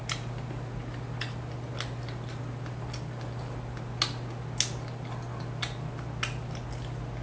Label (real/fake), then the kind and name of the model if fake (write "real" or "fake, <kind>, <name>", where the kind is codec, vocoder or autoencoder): real